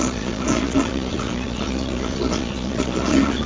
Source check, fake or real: fake